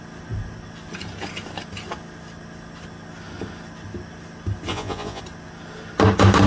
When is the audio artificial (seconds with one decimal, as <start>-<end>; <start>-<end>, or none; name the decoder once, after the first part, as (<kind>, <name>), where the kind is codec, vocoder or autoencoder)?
4.7-5.2 (vocoder, Vocos)